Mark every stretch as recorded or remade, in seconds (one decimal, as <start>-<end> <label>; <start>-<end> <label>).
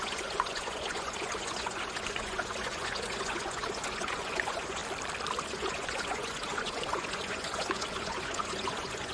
0.0-4.8 remade; 4.8-5.4 recorded; 5.4-9.1 remade